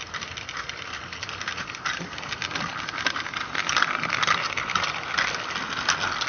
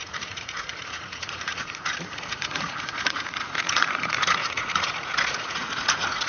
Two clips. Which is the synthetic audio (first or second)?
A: second